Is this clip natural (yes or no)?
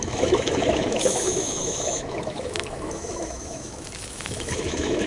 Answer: no